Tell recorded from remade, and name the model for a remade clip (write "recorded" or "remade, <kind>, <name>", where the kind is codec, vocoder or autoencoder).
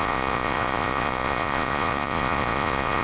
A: remade, vocoder, Vocos